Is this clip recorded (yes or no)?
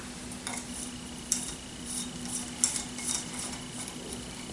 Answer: yes